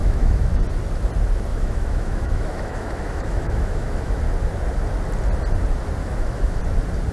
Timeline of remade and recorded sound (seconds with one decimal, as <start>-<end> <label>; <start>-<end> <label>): 0.0-0.6 remade; 0.6-1.5 recorded; 1.5-4.2 remade; 4.2-6.0 recorded; 6.0-6.6 remade; 6.6-7.1 recorded

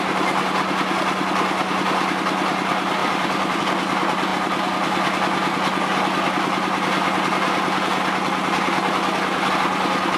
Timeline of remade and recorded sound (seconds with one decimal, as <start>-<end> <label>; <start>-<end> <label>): 0.0-3.0 recorded; 3.0-3.6 remade; 3.6-10.2 recorded

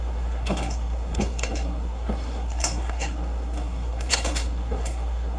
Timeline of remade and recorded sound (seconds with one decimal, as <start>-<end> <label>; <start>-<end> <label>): 0.0-5.4 remade